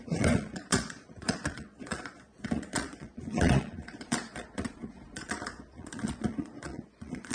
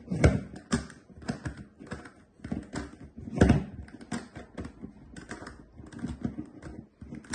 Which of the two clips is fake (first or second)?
first